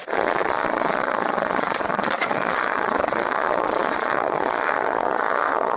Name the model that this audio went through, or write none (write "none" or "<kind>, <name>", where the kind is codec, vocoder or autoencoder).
vocoder, Vocos